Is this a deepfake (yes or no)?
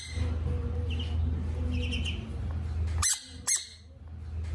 no